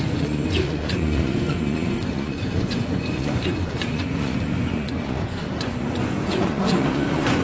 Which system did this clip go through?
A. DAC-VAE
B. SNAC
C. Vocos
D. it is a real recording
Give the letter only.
C